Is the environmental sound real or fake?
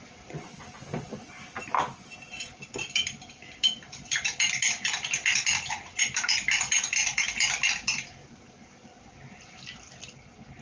real